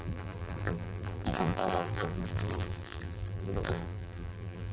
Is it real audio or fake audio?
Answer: fake